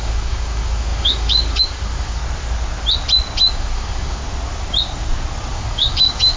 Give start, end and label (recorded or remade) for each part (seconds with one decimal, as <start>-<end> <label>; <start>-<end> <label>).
0.0-2.2 remade; 2.2-3.5 recorded; 3.5-4.2 remade; 4.2-5.5 recorded; 5.5-6.4 remade